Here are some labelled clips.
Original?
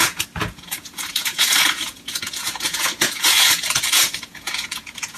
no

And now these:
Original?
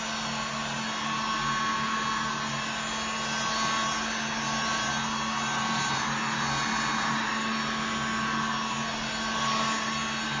yes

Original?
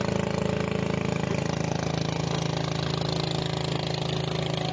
yes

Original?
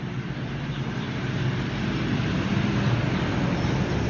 yes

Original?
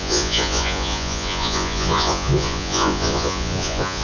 no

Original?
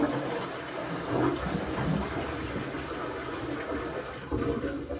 yes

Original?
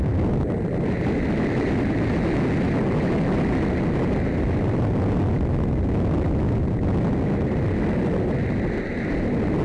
yes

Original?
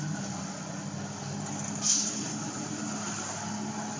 yes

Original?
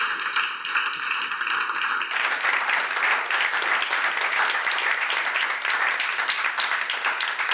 yes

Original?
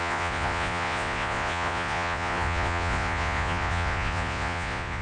no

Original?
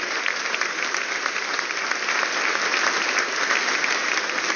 yes